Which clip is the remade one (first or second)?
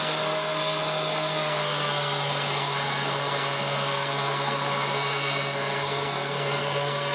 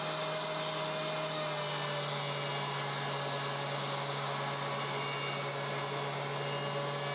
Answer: first